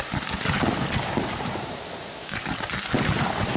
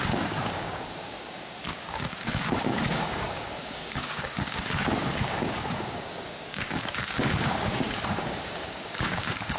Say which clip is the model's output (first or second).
second